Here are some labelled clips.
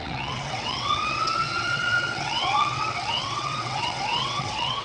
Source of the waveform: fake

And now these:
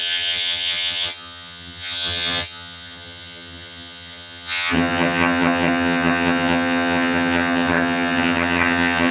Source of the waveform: fake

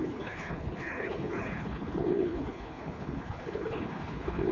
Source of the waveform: fake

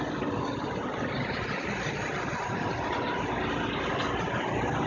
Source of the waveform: real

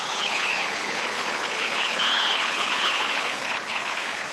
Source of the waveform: fake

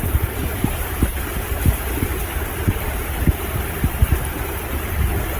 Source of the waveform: real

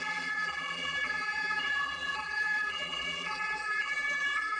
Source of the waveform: fake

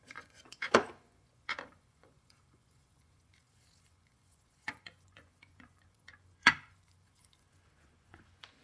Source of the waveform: fake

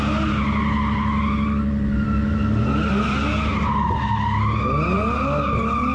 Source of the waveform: real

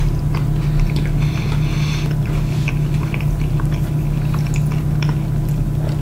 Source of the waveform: real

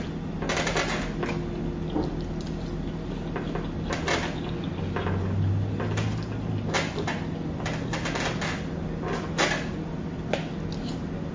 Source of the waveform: real